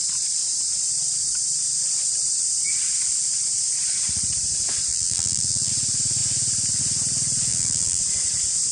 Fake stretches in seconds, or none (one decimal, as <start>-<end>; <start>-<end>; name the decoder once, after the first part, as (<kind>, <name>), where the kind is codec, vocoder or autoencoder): 4.9-5.7 (vocoder, BigVGAN v2); 7.5-8.0